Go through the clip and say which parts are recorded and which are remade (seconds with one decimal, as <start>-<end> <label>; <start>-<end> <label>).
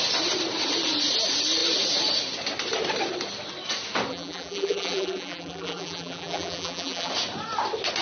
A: 0.0-4.1 recorded; 4.1-7.1 remade; 7.1-8.0 recorded